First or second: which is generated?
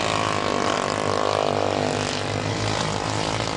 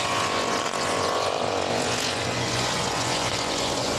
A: second